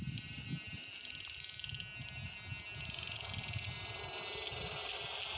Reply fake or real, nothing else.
real